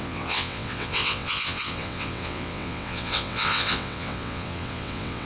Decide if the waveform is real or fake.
fake